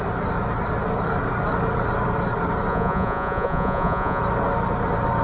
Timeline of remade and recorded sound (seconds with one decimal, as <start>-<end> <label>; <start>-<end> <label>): 0.0-2.7 recorded; 2.7-4.2 remade; 4.2-5.2 recorded